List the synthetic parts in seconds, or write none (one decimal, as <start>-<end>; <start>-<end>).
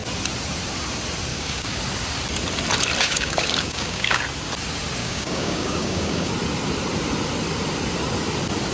1.3-1.8; 3.0-4.2; 5.0-6.3